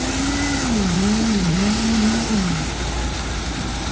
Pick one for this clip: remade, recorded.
recorded